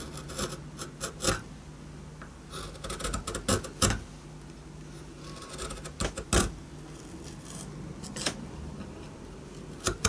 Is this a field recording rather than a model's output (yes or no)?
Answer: yes